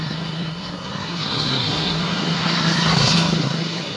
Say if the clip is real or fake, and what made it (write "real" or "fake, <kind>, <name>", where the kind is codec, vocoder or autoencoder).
fake, codec, SNAC